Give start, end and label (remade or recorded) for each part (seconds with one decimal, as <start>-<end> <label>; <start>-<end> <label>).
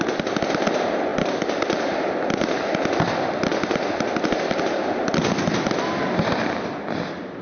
0.0-7.4 recorded